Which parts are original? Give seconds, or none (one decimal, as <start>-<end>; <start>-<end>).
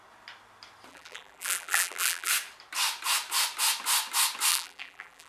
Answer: 0.0-0.9; 2.3-4.5